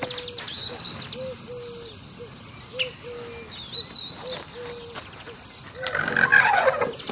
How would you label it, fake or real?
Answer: real